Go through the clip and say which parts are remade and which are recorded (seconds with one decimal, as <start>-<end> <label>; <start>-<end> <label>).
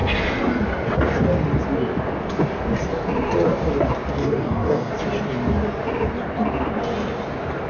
0.0-4.2 recorded; 4.2-4.9 remade; 4.9-7.7 recorded